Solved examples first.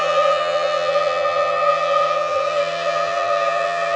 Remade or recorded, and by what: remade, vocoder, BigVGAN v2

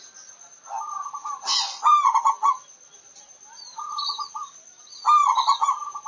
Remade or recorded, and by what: remade, vocoder, BigVGAN v2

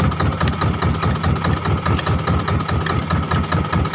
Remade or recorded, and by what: recorded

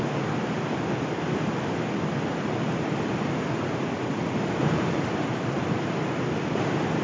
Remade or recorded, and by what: remade, vocoder, BigVGAN v2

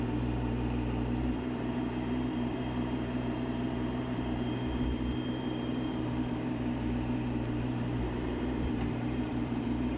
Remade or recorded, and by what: remade, vocoder, BigVGAN v2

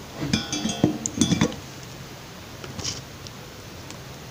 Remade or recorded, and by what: recorded